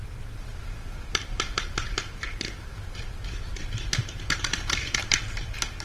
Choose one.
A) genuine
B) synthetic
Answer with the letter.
B